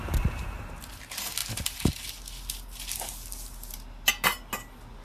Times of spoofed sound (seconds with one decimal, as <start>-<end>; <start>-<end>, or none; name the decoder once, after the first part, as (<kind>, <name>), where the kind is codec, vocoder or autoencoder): none